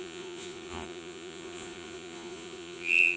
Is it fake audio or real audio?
fake